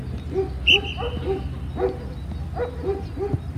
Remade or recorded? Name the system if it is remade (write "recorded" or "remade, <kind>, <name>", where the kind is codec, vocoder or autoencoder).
recorded